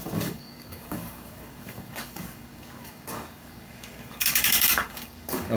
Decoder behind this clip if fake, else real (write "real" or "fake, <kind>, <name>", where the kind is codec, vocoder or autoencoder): fake, codec, DAC